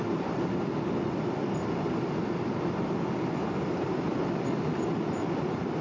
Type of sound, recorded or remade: recorded